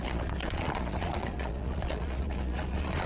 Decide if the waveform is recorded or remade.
remade